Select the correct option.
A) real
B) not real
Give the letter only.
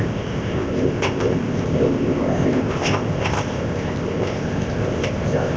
B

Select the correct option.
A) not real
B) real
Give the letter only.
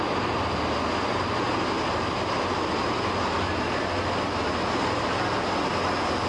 B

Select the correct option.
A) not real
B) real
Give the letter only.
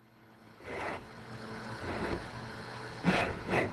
A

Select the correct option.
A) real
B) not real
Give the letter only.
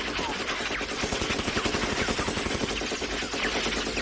A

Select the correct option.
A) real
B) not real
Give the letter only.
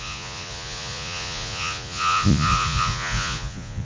B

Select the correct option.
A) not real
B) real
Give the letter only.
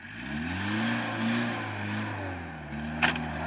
B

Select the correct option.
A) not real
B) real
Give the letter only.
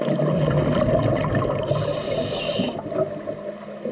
B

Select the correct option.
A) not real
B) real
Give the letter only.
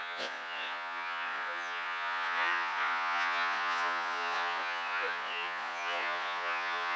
A